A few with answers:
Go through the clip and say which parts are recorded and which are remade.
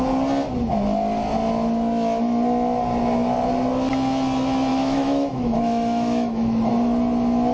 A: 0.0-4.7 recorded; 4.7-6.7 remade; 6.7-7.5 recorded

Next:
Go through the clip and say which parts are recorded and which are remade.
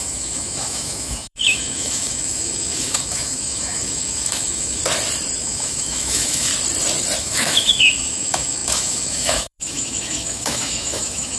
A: 0.0-4.8 remade; 4.8-5.4 recorded; 5.4-6.5 remade; 6.5-7.2 recorded; 7.2-11.4 remade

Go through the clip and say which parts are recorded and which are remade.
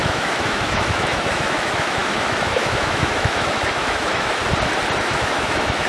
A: 0.0-4.4 remade; 4.4-5.0 recorded; 5.0-5.9 remade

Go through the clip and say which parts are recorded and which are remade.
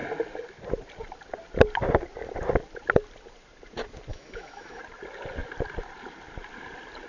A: 0.0-4.1 recorded; 4.1-4.8 remade; 4.8-7.1 recorded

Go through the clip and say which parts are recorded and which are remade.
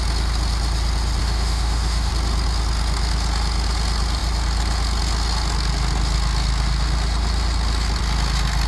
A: 0.0-1.2 recorded; 1.2-2.1 remade; 2.1-8.7 recorded